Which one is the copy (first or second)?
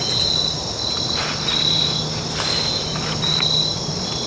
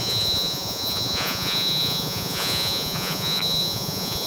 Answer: second